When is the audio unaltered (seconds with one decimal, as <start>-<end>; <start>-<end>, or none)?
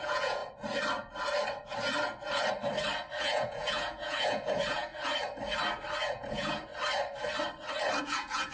0.4-3.2; 4.9-6.1; 6.7-8.0